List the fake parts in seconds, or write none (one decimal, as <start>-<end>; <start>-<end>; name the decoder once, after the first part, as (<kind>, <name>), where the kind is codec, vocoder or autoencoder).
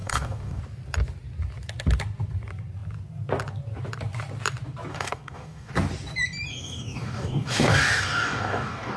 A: 0.0-0.6 (codec, DAC); 4.9-5.7; 6.5-9.0